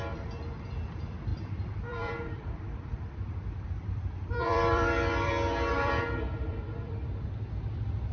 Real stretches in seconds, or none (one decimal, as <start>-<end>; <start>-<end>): 0.0-1.3; 5.3-5.7; 7.2-8.1